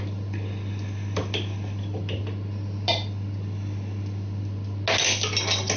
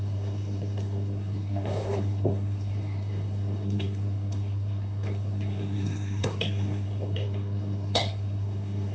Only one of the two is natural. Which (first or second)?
first